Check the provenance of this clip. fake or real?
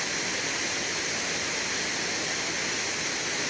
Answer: real